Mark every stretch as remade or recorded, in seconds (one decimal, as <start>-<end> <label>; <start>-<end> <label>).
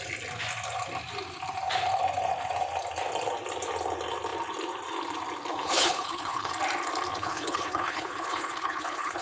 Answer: 0.0-5.5 recorded; 5.5-6.5 remade; 6.5-7.1 recorded; 7.1-9.2 remade